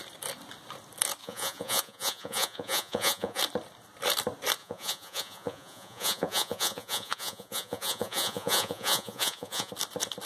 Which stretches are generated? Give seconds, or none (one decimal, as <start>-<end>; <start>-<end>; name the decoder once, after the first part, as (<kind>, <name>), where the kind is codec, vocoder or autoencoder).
1.2-3.4 (vocoder, Vocos); 4.6-9.7